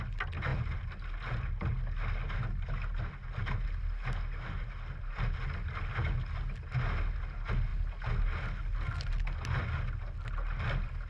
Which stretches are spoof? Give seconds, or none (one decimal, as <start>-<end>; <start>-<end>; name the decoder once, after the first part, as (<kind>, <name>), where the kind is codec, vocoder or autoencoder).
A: none